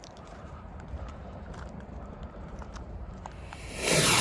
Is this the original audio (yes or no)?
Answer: no